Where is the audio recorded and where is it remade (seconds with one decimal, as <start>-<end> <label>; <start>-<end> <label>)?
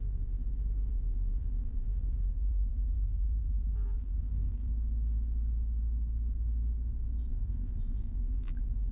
0.0-0.4 remade; 0.4-0.9 recorded; 0.9-4.7 remade; 4.7-7.3 recorded; 7.3-8.9 remade